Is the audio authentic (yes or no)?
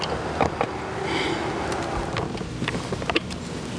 yes